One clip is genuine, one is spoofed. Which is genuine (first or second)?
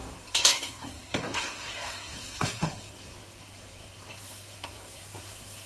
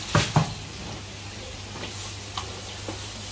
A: second